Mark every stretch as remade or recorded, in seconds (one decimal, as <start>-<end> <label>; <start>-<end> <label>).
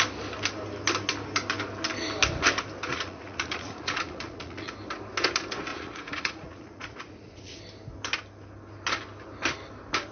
0.0-2.9 recorded; 2.9-4.7 remade; 4.7-5.7 recorded; 5.7-7.6 remade; 7.6-10.1 recorded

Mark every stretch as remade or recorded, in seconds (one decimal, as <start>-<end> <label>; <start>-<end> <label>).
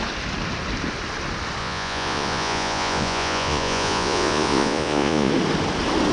0.0-1.6 recorded; 1.6-5.3 remade; 5.3-6.1 recorded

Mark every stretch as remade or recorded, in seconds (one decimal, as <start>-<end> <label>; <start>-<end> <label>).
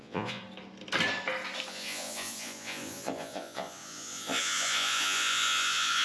0.0-0.4 remade; 0.4-1.7 recorded; 1.7-6.0 remade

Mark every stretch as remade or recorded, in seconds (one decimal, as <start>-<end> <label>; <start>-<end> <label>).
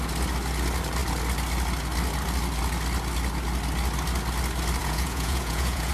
0.0-4.8 recorded; 4.8-5.9 remade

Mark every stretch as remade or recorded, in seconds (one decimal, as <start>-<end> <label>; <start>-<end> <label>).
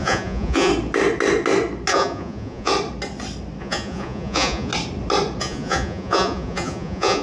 0.0-0.7 remade; 0.7-1.9 recorded; 1.9-2.7 remade; 2.7-3.6 recorded; 3.6-4.7 remade; 4.7-5.4 recorded; 5.4-7.2 remade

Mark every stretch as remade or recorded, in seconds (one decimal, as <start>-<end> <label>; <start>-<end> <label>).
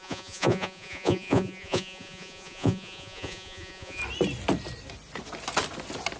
0.0-4.0 remade; 4.0-6.2 recorded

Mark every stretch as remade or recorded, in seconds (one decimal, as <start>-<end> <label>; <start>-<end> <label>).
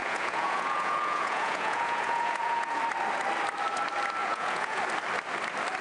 0.0-2.8 remade; 2.8-4.2 recorded; 4.2-4.8 remade; 4.8-5.8 recorded